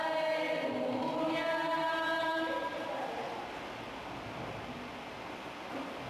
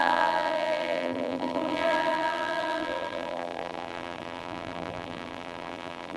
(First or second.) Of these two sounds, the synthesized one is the second